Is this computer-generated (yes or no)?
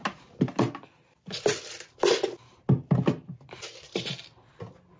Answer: no